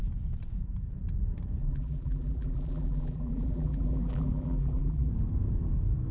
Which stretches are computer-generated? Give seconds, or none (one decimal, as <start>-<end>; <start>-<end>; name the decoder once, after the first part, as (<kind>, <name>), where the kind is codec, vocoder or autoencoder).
1.6-5.1 (vocoder, BigVGAN v2)